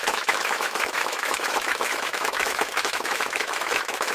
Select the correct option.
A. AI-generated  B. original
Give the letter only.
A